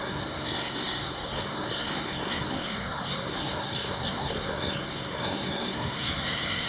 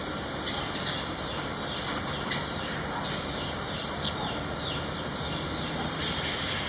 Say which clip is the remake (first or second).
first